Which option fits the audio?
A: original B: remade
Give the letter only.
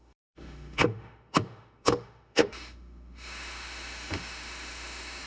B